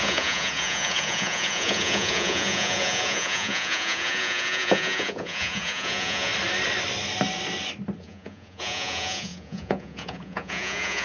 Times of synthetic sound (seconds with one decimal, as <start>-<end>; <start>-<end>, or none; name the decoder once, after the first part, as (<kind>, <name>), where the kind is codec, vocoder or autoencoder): 0.0-6.3 (vocoder, Vocos); 8.0-11.0